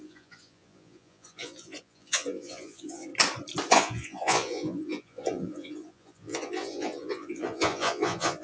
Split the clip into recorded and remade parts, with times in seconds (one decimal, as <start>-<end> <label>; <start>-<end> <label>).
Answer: 0.0-3.1 remade; 3.1-3.7 recorded; 3.7-8.4 remade

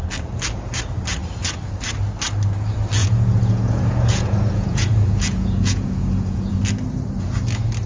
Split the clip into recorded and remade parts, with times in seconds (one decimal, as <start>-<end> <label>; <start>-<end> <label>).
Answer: 0.0-3.0 recorded; 3.0-6.6 remade; 6.6-7.9 recorded

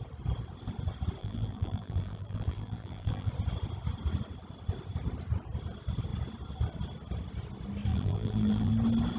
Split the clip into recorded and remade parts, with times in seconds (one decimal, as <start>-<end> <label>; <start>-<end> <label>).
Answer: 0.0-1.2 recorded; 1.2-3.3 remade; 3.3-7.9 recorded; 7.9-8.7 remade; 8.7-9.2 recorded

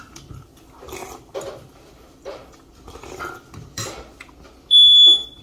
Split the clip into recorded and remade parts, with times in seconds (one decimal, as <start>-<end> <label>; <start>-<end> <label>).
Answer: 0.0-1.0 recorded; 1.0-4.2 remade; 4.2-5.4 recorded

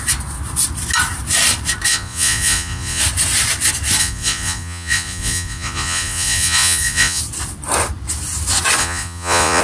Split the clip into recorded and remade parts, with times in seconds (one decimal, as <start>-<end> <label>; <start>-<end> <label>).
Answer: 0.0-1.9 recorded; 1.9-3.0 remade; 3.0-4.0 recorded; 4.0-7.2 remade; 7.2-8.8 recorded; 8.8-9.6 remade

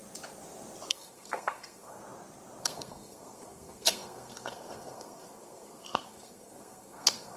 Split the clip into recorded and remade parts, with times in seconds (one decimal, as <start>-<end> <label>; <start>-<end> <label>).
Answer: 0.0-0.9 recorded; 0.9-2.0 remade; 2.0-2.6 recorded; 2.6-7.4 remade

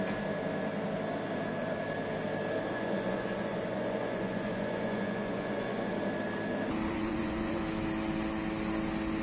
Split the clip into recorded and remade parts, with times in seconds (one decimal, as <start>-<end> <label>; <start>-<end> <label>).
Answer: 0.0-2.7 recorded; 2.7-5.9 remade; 5.9-6.9 recorded; 6.9-7.6 remade; 7.6-9.2 recorded

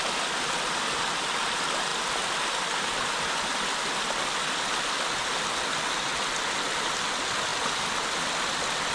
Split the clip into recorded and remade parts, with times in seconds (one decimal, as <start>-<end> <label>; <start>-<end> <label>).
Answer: 0.0-8.9 recorded